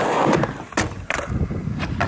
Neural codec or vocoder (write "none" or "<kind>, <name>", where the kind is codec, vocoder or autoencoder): none